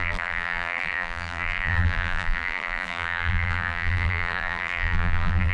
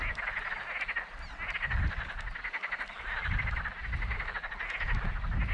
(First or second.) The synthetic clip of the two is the first